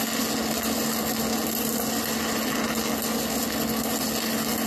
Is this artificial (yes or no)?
no